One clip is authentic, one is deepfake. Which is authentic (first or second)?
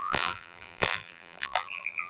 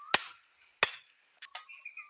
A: second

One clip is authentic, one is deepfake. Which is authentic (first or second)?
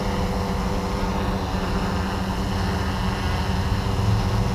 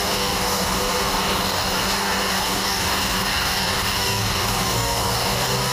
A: first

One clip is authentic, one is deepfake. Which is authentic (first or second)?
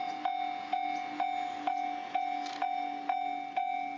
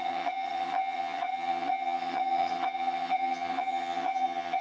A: first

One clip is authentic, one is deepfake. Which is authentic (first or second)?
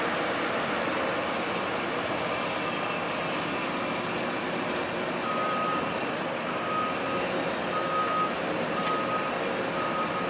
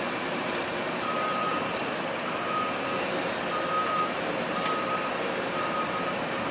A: first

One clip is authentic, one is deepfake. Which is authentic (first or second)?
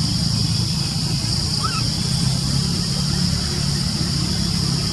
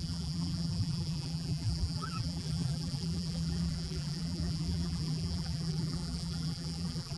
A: first